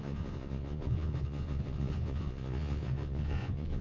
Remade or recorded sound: remade